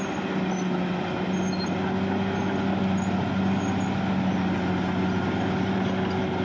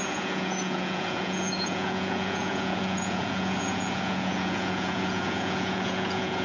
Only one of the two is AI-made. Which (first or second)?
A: second